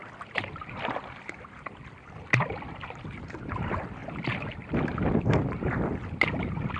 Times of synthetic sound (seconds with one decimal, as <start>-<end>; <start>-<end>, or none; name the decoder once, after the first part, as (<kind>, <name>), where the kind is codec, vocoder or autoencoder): 0.0-4.0 (vocoder, BigVGAN v2); 5.5-6.8